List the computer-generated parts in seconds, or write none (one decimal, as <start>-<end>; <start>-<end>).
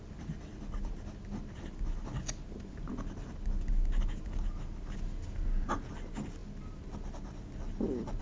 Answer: none